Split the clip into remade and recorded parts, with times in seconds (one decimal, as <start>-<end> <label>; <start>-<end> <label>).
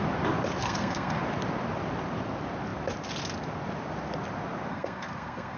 0.0-0.6 recorded; 0.6-1.2 remade; 1.2-4.7 recorded; 4.7-5.6 remade